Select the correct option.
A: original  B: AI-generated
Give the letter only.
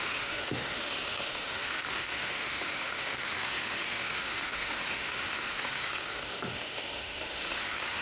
B